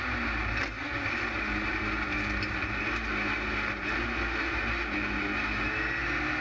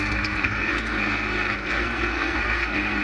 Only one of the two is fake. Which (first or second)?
second